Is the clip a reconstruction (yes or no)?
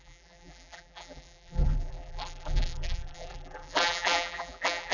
yes